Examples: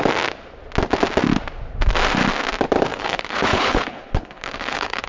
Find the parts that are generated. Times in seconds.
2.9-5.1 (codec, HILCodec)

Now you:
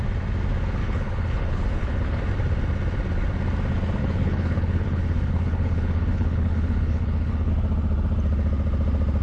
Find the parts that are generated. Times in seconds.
0.8-2.2 (codec, HILCodec); 4.0-7.5

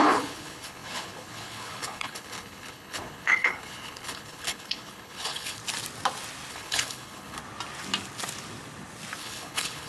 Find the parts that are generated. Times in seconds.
0.0-5.6 (codec, HILCodec); 6.5-7.4; 9.2-9.9

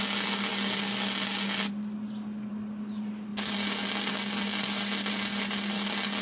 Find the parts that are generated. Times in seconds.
none

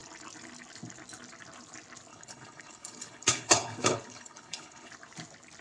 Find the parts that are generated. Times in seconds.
2.1-4.9 (codec, HILCodec)

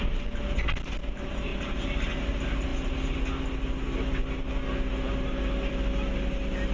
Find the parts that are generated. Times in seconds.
none